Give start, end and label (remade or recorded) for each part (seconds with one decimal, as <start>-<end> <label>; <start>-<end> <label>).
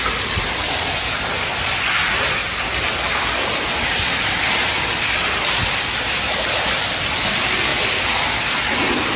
0.0-9.2 recorded